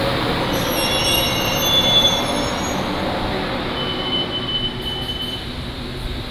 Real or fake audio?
real